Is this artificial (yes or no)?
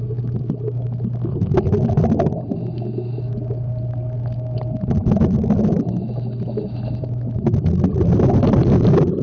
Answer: no